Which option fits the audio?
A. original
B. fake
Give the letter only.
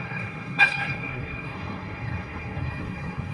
B